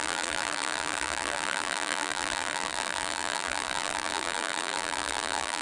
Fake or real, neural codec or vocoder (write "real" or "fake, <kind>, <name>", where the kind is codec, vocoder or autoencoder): fake, vocoder, BigVGAN v2